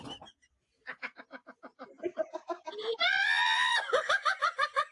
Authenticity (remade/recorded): recorded